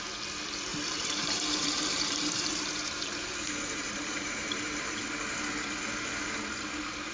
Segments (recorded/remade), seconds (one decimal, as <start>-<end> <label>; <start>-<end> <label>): 0.0-0.7 recorded; 0.7-5.0 remade; 5.0-7.1 recorded